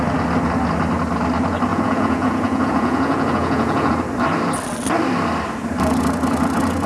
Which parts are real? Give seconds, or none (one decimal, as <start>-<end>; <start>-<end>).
0.0-1.7; 3.9-6.9